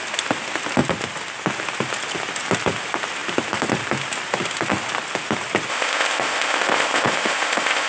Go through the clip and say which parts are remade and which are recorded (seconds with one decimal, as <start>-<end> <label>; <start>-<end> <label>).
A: 0.0-5.7 recorded; 5.7-7.9 remade